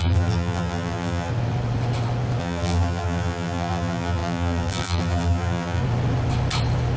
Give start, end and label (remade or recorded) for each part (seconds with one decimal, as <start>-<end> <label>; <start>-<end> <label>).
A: 0.0-1.3 remade; 1.3-2.4 recorded; 2.4-5.8 remade; 5.8-7.0 recorded